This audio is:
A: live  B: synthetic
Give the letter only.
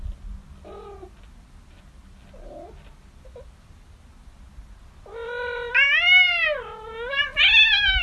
A